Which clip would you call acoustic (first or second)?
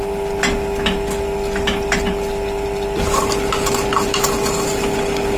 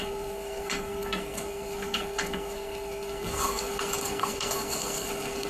first